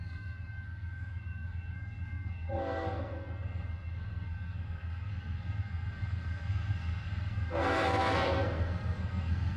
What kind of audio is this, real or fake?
fake